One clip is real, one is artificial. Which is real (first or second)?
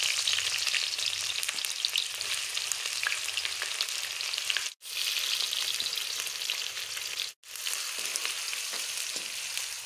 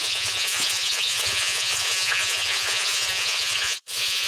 first